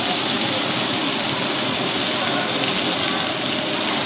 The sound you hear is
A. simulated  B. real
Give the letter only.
B